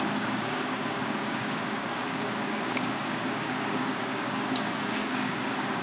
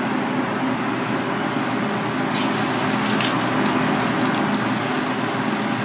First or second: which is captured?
second